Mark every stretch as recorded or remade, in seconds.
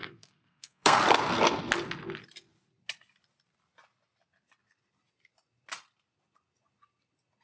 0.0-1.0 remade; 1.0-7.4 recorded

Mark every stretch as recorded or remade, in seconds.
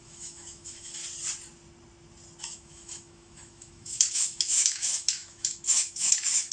0.0-1.0 remade; 1.0-2.4 recorded; 2.4-6.5 remade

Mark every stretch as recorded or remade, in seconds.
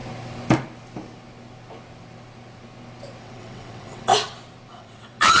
0.0-3.2 recorded; 3.2-4.1 remade; 4.1-4.7 recorded; 4.7-5.4 remade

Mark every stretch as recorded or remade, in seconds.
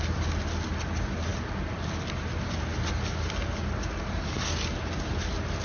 0.0-5.6 recorded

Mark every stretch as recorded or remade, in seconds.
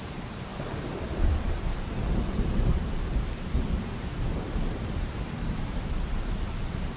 0.0-7.0 remade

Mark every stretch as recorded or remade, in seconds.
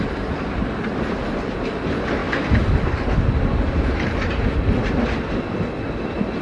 0.0-6.4 recorded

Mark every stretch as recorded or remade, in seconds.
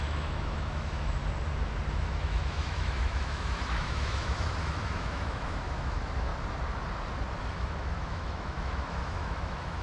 0.0-1.2 remade; 1.2-1.9 recorded; 1.9-6.3 remade; 6.3-7.4 recorded; 7.4-9.8 remade